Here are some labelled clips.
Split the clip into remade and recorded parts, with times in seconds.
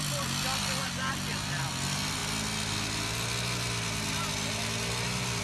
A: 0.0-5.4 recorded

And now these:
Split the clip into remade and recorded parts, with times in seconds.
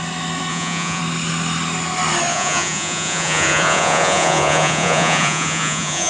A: 0.0-0.5 recorded; 0.5-1.0 remade; 1.0-2.3 recorded; 2.3-6.1 remade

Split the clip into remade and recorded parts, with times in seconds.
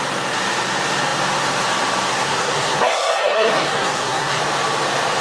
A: 0.0-2.1 recorded; 2.1-4.4 remade; 4.4-5.2 recorded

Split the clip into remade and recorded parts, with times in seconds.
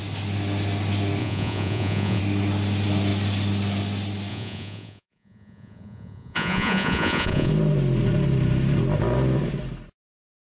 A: 0.0-1.2 recorded; 1.2-2.2 remade; 2.2-4.3 recorded; 4.3-7.5 remade; 7.5-10.5 recorded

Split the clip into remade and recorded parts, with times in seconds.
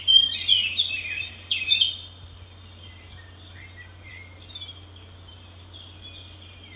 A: 0.0-0.5 remade; 0.5-3.0 recorded; 3.0-4.1 remade; 4.1-5.3 recorded; 5.3-6.8 remade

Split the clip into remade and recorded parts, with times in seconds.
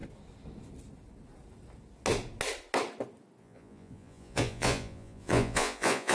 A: 0.0-3.4 recorded; 3.4-6.1 remade